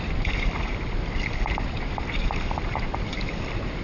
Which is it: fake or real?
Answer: real